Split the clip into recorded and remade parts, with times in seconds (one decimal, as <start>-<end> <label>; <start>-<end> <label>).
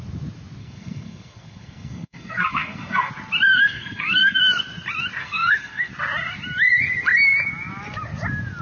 0.0-0.6 recorded; 0.6-3.1 remade; 3.1-3.5 recorded; 3.5-4.4 remade; 4.4-5.2 recorded; 5.2-5.9 remade; 5.9-8.6 recorded